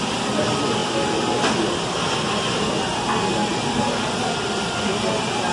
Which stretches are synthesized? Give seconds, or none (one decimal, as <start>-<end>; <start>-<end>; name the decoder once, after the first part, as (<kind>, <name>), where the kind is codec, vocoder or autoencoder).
none